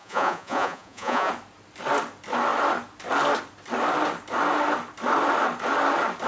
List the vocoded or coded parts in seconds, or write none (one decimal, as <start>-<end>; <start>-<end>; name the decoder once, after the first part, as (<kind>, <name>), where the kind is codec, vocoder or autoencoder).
0.0-1.3 (vocoder, Vocos)

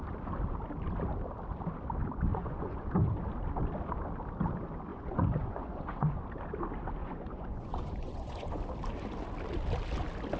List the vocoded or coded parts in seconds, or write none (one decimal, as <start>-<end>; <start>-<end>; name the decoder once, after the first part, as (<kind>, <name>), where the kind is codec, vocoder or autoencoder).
2.3-2.9 (vocoder, Vocos); 4.9-6.1; 7.0-8.6

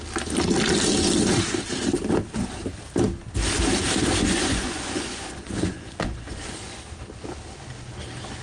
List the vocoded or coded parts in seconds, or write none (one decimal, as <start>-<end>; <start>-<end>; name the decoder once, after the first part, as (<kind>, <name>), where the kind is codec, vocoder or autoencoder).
4.2-6.8 (vocoder, Vocos)

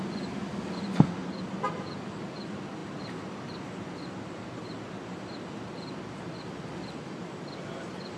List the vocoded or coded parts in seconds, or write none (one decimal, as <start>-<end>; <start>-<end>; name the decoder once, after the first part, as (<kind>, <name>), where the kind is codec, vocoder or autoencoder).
none

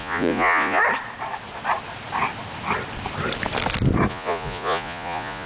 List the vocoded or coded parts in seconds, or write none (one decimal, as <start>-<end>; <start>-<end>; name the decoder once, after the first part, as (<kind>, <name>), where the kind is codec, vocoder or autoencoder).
0.0-0.8 (vocoder, Vocos); 4.1-5.5

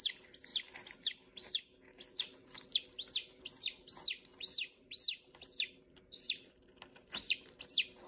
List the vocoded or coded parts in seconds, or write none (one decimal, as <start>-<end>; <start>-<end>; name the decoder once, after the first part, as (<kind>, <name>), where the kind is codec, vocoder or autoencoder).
none